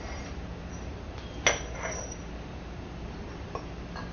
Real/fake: real